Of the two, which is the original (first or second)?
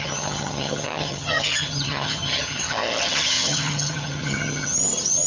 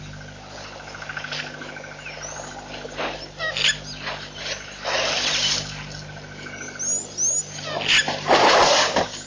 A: second